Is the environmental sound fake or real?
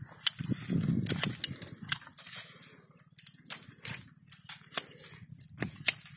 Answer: real